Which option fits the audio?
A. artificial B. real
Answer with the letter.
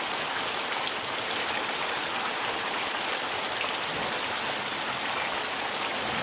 B